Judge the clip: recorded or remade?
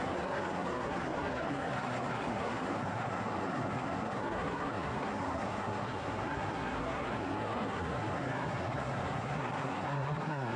remade